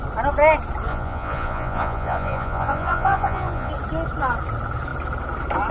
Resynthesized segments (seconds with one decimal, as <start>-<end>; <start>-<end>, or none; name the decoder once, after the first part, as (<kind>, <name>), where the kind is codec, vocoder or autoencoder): 0.9-3.7 (vocoder, Vocos)